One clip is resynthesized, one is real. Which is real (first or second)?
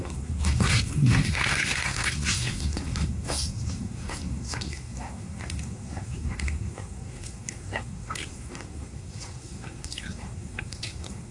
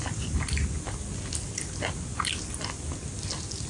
second